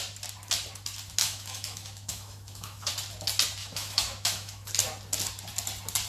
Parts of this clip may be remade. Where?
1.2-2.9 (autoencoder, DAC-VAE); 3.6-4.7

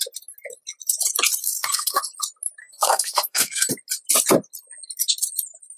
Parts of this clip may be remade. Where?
1.4-2.0 (codec, SNAC); 2.6-3.7

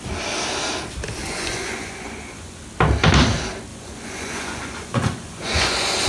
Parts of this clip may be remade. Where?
1.2-2.6 (vocoder, Vocos); 3.7-6.1

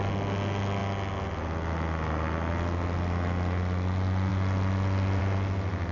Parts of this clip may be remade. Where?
none

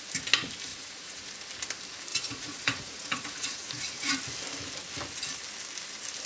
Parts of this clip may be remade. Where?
0.7-1.3 (vocoder, Vocos); 2.1-4.1

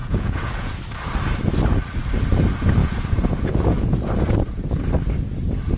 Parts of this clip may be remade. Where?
0.0-0.8 (vocoder, Vocos); 2.8-4.8

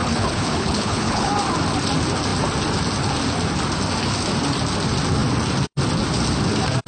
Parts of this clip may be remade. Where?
0.0-1.3 (codec, HILCodec)

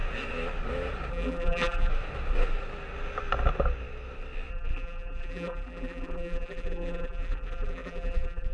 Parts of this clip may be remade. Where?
1.1-1.9 (vocoder, BigVGAN v2); 4.5-8.5